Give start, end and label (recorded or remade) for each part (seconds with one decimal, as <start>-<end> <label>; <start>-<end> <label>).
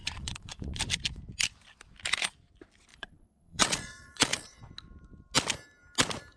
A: 0.0-0.8 remade; 0.8-2.9 recorded; 2.9-4.6 remade; 4.6-6.4 recorded